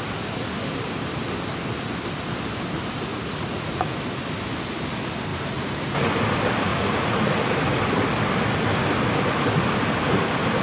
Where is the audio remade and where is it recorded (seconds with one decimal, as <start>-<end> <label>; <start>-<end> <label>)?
0.0-3.1 recorded; 3.1-3.9 remade; 3.9-5.3 recorded; 5.3-6.1 remade; 6.1-6.7 recorded; 6.7-7.8 remade; 7.8-10.6 recorded

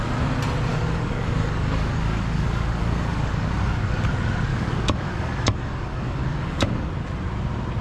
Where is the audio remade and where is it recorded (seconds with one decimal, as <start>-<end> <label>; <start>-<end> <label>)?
0.0-0.7 recorded; 0.7-4.1 remade; 4.1-4.5 recorded; 4.5-6.9 remade; 6.9-7.8 recorded

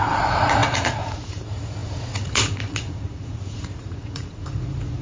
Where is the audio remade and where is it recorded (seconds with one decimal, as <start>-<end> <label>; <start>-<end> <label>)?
0.0-5.0 remade

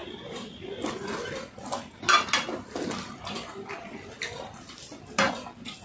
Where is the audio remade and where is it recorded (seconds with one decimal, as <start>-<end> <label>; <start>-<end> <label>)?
0.0-5.8 recorded